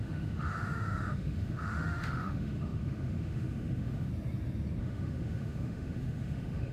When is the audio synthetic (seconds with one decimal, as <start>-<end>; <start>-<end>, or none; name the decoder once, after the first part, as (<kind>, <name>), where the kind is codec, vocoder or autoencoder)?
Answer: 0.0-4.1 (autoencoder, DAC-VAE); 4.8-6.7